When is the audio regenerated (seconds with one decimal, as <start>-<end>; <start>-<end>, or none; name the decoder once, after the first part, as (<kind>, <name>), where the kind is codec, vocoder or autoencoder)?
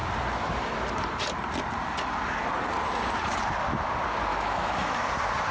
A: 4.3-5.0 (autoencoder, DAC-VAE)